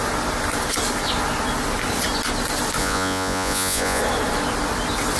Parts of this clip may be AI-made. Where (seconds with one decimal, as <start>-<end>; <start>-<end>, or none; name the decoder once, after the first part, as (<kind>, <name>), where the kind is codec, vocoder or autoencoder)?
2.8-4.0 (vocoder, Vocos)